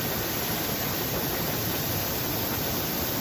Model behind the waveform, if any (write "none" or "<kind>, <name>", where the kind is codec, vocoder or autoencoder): none